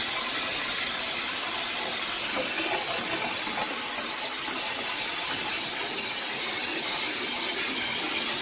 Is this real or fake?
real